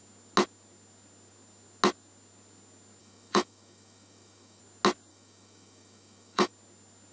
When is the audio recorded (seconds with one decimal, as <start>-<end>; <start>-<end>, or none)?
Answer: 0.0-3.0; 4.6-5.1; 6.5-7.1